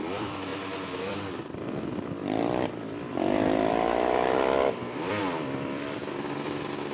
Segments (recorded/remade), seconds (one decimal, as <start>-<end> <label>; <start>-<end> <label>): 0.0-0.5 remade; 0.5-1.0 recorded; 1.0-6.9 remade